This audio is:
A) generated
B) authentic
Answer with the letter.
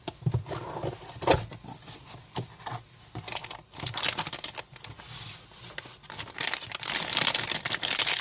B